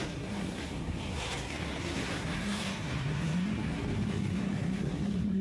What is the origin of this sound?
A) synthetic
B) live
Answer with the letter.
A